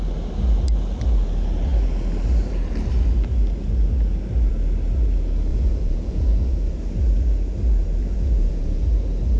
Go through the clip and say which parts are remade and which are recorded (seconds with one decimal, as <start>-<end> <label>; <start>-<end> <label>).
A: 0.0-5.5 recorded; 5.5-6.7 remade; 6.7-8.0 recorded; 8.0-8.9 remade; 8.9-9.4 recorded